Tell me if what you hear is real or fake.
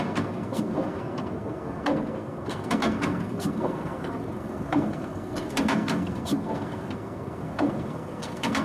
fake